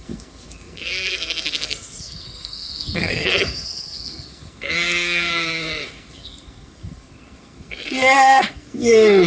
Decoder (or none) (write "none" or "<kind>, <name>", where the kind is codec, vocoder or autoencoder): codec, SNAC